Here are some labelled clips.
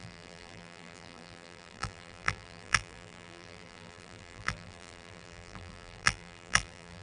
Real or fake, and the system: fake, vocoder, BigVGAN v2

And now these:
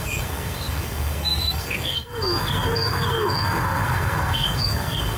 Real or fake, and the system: fake, codec, SNAC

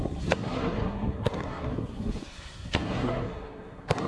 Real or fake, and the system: fake, codec, SNAC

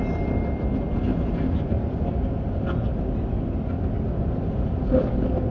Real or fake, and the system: real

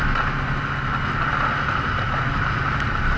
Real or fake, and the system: real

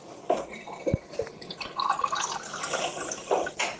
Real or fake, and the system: real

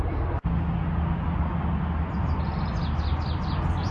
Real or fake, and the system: real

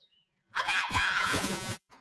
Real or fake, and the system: fake, vocoder, Vocos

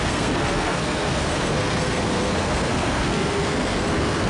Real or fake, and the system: fake, codec, SNAC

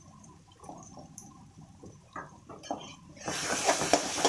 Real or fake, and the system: fake, vocoder, BigVGAN v2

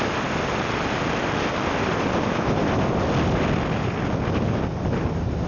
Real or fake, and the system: real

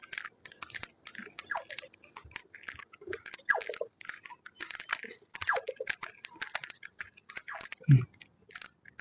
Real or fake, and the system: real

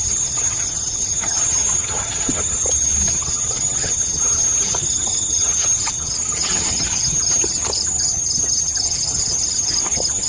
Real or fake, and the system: fake, vocoder, HiFi-GAN